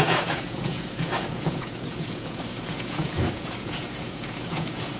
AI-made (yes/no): yes